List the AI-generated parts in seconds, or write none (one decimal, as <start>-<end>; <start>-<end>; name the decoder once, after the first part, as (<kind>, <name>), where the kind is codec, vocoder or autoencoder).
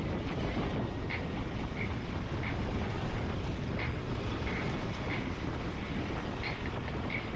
3.3-4.6 (vocoder, BigVGAN v2)